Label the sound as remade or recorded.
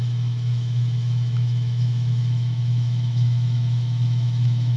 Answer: remade